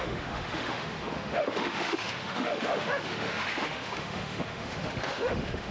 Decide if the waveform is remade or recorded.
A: remade